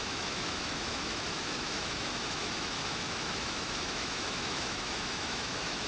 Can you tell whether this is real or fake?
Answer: fake